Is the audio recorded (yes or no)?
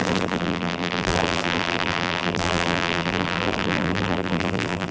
no